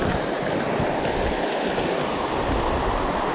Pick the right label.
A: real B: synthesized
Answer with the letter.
A